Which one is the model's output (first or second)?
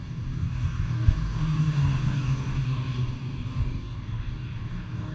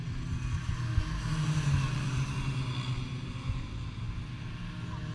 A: first